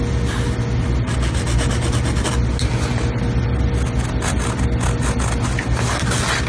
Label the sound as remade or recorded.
recorded